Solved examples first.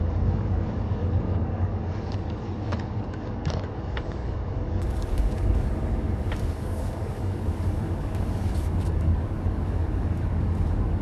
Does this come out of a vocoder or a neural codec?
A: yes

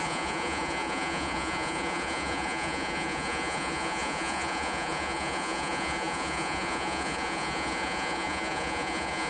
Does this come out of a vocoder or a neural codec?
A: yes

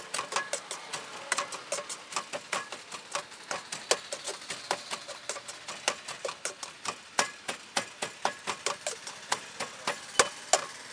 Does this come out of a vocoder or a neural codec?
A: no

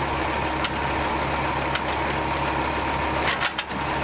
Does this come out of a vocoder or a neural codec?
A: no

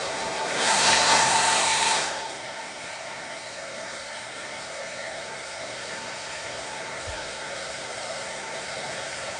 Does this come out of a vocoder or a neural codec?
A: yes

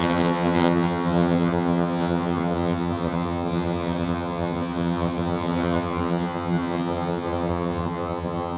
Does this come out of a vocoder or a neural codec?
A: yes